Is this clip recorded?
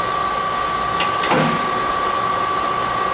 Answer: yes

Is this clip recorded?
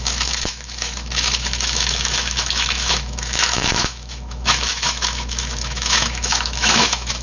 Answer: no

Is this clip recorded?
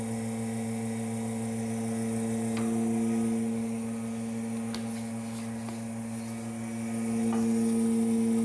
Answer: yes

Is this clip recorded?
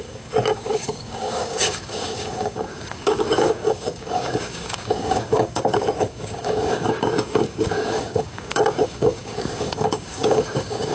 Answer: no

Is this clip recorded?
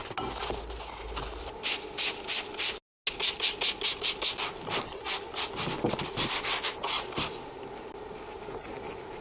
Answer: yes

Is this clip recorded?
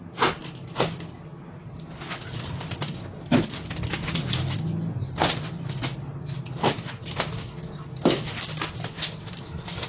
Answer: yes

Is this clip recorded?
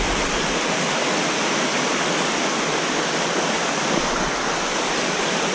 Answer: yes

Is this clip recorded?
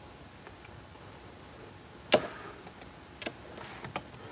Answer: yes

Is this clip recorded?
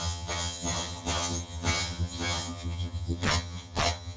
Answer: no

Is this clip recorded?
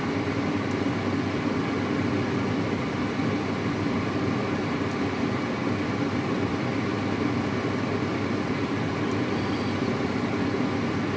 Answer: no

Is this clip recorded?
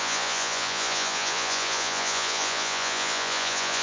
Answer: no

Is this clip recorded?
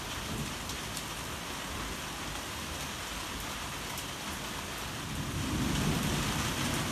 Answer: yes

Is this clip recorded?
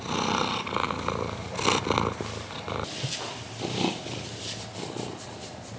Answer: yes